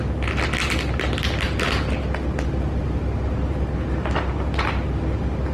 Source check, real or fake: real